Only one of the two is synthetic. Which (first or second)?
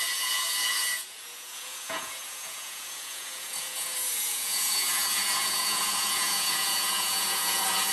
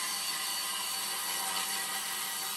first